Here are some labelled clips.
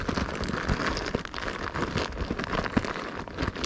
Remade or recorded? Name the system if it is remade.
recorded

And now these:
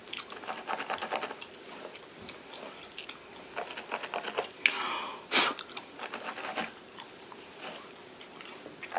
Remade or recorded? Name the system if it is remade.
recorded